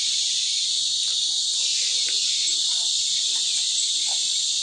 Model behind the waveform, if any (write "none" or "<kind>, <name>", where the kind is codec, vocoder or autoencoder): none